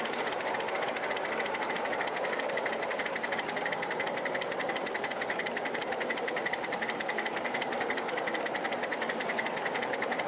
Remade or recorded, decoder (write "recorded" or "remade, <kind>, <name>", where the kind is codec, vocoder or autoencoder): recorded